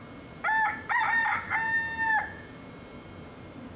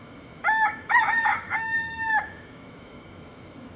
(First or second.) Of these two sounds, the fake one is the second